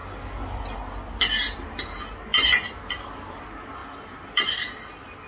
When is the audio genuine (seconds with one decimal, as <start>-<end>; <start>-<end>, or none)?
0.0-5.3